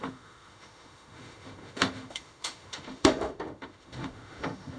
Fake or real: fake